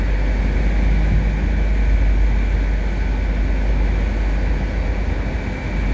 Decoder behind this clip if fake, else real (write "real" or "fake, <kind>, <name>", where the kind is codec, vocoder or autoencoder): real